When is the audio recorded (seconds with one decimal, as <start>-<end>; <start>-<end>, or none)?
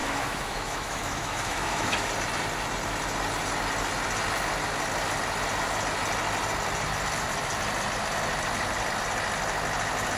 2.1-10.2